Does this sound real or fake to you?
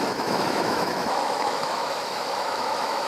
fake